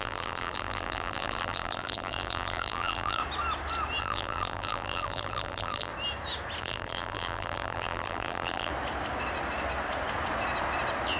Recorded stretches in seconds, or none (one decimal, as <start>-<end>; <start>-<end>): 3.2-4.0; 5.9-6.6; 8.7-11.2